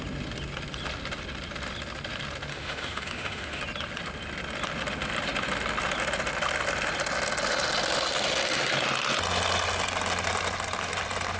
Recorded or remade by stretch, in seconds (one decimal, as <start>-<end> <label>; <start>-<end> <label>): 0.0-2.5 recorded; 2.5-3.6 remade; 3.6-11.4 recorded